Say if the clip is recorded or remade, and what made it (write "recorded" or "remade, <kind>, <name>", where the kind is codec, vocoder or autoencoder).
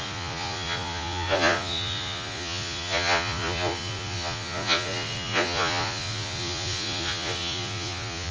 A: remade, vocoder, Vocos